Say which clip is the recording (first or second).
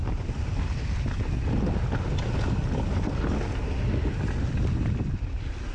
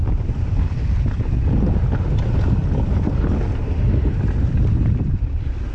first